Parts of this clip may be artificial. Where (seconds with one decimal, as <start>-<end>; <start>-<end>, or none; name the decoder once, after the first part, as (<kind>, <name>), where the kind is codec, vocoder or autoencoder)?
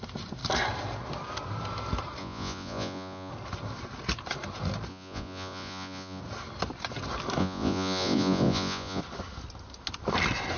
2.2-3.3 (vocoder, Vocos); 4.9-6.2; 7.4-9.0